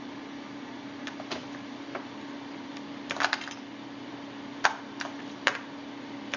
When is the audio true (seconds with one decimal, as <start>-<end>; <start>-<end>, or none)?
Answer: 0.0-6.4